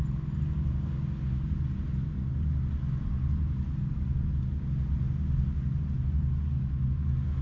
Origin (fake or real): real